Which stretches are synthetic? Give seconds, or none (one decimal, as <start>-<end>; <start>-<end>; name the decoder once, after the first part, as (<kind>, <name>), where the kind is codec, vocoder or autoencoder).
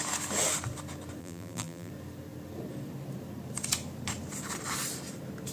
1.2-1.9 (vocoder, BigVGAN v2)